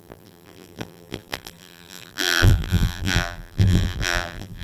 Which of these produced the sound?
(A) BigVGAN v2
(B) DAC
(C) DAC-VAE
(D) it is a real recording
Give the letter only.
A